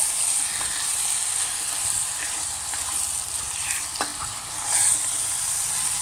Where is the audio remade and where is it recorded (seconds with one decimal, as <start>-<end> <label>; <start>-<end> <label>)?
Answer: 0.0-0.9 recorded; 0.9-3.0 remade; 3.0-4.1 recorded; 4.1-4.9 remade; 4.9-6.0 recorded